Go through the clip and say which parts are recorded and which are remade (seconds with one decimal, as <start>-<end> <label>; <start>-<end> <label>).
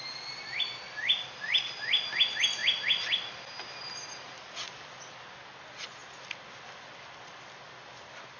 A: 0.0-6.0 recorded; 6.0-7.2 remade; 7.2-8.4 recorded